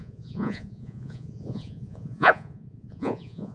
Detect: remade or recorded remade